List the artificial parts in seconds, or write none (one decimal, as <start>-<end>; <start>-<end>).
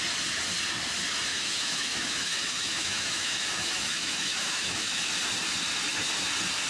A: 1.3-5.1